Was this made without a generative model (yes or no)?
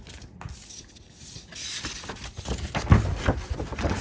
yes